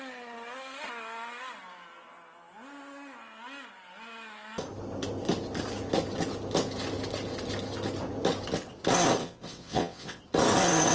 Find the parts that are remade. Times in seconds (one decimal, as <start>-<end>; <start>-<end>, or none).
9.2-10.2